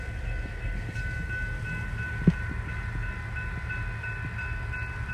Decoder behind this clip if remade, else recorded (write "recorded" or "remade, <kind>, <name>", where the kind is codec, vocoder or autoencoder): recorded